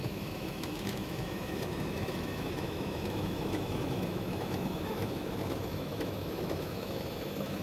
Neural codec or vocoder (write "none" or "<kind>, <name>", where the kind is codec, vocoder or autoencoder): autoencoder, DAC-VAE